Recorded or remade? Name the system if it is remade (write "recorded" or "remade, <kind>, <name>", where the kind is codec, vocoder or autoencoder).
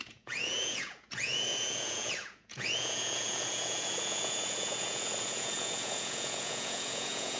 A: remade, vocoder, Vocos